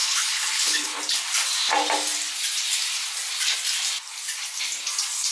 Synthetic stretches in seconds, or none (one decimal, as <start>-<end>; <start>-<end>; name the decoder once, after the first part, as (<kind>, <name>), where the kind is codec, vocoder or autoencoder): 0.0-1.0 (codec, HILCodec)